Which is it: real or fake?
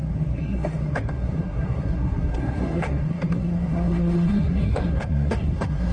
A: fake